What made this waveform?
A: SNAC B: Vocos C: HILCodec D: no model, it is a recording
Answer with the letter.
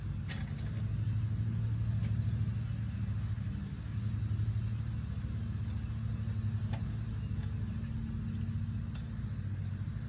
D